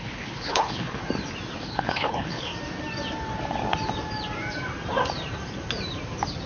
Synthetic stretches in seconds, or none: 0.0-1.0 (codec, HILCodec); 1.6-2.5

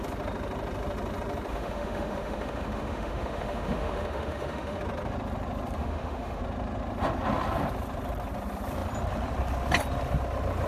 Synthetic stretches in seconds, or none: 1.5-4.8 (autoencoder, DAC-VAE); 5.8-6.4

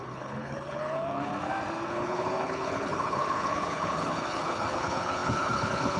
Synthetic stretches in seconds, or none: 0.0-1.3 (codec, HILCodec); 1.9-6.0

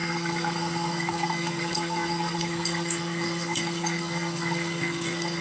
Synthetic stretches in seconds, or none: 0.0-5.4 (codec, SNAC)